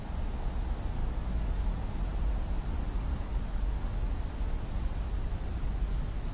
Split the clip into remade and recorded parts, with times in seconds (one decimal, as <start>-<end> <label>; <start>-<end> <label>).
0.0-1.0 recorded; 1.0-1.9 remade; 1.9-3.1 recorded; 3.1-3.9 remade; 3.9-6.3 recorded